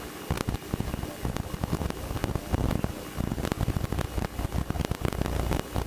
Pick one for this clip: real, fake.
real